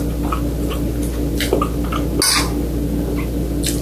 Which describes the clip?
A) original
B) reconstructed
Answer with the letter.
A